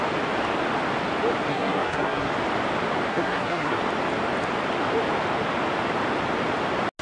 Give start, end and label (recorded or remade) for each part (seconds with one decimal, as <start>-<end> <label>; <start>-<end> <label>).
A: 0.0-1.5 recorded; 1.5-2.3 remade; 2.3-3.1 recorded; 3.1-3.8 remade; 3.8-7.0 recorded